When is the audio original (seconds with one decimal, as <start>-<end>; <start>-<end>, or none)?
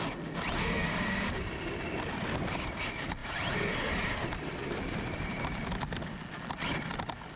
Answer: 0.0-3.2; 4.2-7.4